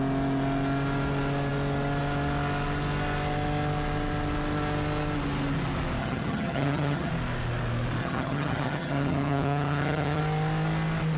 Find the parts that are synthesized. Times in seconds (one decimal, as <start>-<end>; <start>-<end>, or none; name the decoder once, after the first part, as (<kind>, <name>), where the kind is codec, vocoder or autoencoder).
6.0-7.1 (vocoder, HiFi-GAN); 8.0-10.2